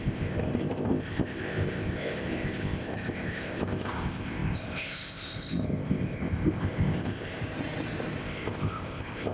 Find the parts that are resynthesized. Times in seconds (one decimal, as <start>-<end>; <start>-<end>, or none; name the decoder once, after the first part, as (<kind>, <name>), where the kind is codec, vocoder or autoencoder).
0.0-7.4 (codec, ZipCodec); 8.2-9.3